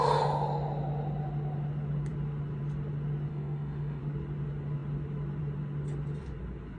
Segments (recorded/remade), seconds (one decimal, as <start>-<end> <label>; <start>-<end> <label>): 0.0-3.3 recorded; 3.3-4.0 remade; 4.0-6.8 recorded